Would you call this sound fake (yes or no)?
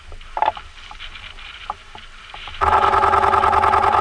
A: no